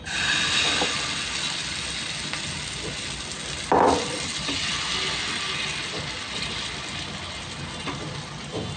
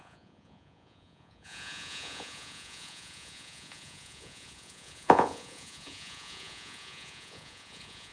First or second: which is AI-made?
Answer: second